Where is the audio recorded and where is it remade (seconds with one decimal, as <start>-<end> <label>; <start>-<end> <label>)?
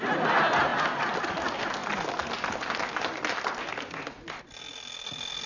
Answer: 0.0-5.5 recorded